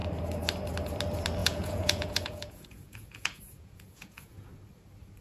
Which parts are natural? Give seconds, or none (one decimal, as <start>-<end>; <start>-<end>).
0.0-1.4; 4.5-5.2